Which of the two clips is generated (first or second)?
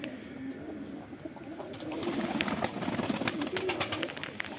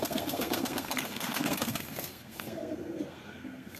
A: second